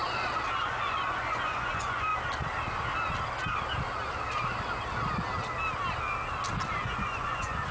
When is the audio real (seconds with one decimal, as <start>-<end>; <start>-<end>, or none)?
0.0-0.6; 2.1-6.7

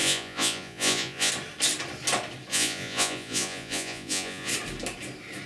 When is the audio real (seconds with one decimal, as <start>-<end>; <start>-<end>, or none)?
1.3-2.5; 4.5-5.5

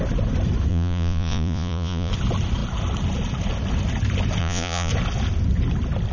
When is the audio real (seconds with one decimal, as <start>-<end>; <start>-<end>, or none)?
0.0-0.7; 2.1-4.4; 4.9-6.1

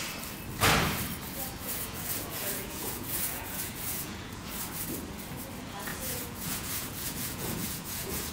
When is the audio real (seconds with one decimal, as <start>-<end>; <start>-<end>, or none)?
0.0-1.6; 4.5-5.9